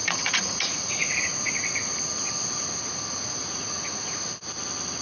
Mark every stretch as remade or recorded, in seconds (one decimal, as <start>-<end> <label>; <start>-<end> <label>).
0.0-1.3 remade; 1.3-3.4 recorded; 3.4-4.1 remade; 4.1-5.0 recorded